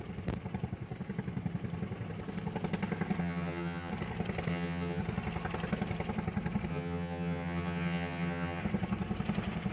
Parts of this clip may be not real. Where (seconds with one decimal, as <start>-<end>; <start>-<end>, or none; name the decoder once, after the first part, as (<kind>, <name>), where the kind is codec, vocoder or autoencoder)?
3.2-3.9 (vocoder, HiFi-GAN); 4.5-5.0; 6.7-8.6